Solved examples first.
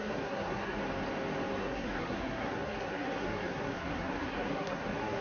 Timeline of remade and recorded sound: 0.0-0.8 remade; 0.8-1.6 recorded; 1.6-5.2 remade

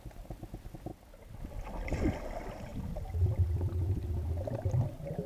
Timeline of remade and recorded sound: 0.0-0.9 remade; 0.9-1.4 recorded; 1.4-2.7 remade; 2.7-4.3 recorded; 4.3-5.3 remade